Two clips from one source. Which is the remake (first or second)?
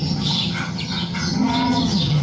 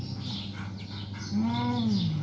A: first